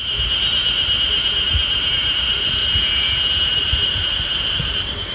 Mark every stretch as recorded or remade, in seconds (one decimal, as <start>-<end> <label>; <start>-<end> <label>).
0.0-5.1 recorded